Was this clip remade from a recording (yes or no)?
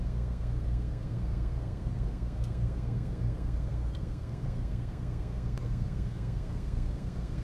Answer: yes